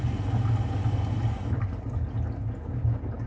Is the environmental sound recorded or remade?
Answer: recorded